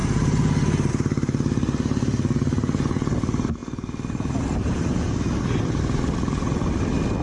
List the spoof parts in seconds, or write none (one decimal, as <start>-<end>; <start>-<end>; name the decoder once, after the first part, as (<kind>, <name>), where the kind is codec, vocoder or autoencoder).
0.0-0.9 (vocoder, BigVGAN v2)